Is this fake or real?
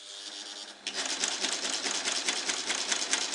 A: real